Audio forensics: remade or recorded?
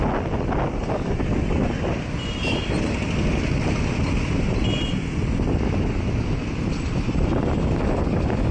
recorded